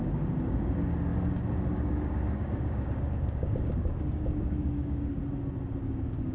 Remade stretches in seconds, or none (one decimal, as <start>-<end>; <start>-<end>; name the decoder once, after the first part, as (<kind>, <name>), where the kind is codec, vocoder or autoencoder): 0.0-5.2 (codec, DAC); 5.8-6.3